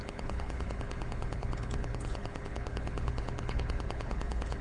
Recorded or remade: remade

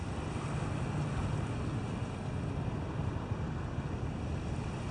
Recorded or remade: recorded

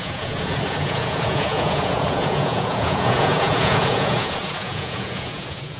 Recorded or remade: remade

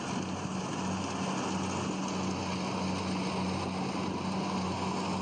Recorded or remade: recorded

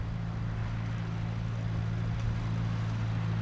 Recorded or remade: recorded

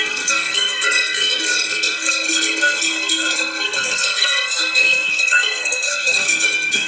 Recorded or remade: remade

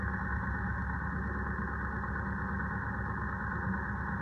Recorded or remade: recorded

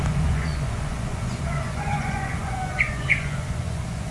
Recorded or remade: remade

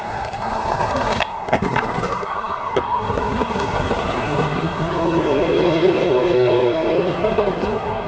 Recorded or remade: remade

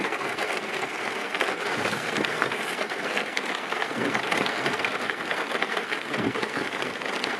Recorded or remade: remade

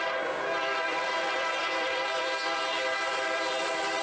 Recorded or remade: remade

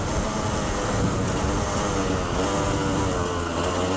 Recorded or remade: recorded